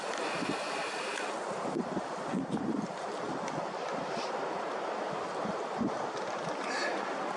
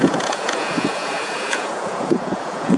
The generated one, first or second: second